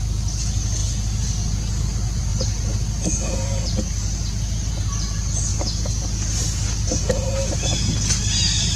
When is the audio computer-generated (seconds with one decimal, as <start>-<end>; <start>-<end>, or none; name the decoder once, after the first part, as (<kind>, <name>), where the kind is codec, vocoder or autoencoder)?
none